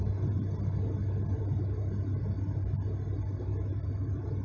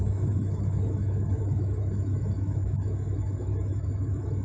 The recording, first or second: first